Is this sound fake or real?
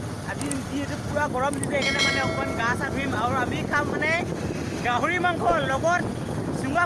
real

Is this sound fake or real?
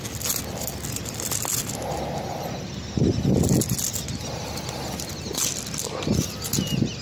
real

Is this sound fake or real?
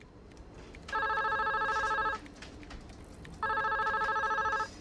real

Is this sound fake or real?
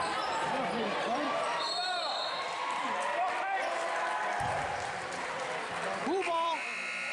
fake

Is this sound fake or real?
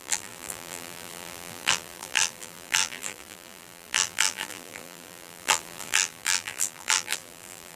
fake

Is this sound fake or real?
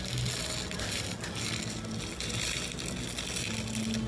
real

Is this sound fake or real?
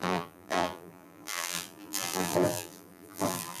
fake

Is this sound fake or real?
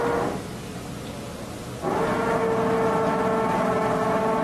real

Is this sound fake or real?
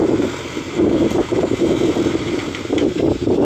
fake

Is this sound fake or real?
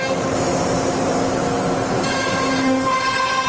fake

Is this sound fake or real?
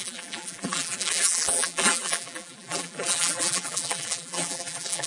fake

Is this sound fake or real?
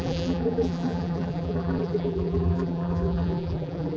fake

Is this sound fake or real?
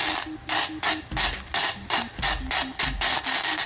real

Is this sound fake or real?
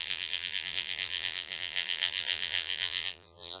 fake